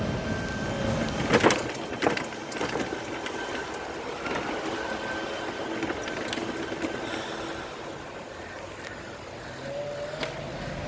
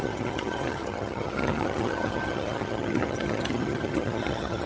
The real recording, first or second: first